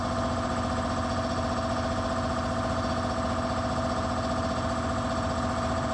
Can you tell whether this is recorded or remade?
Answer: recorded